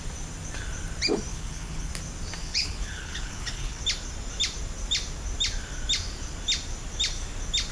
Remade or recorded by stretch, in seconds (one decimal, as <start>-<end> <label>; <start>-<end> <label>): 0.0-1.3 recorded; 1.3-1.9 remade; 1.9-2.4 recorded; 2.4-3.8 remade; 3.8-7.7 recorded